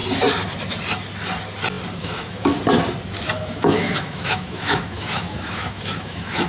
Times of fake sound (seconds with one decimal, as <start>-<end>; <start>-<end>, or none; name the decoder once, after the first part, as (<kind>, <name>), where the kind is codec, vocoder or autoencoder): 2.0-2.5 (autoencoder, DAC-VAE); 3.4-6.5